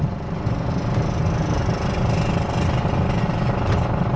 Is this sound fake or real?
real